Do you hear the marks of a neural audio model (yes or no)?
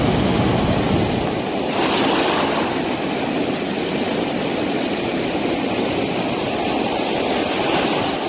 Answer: no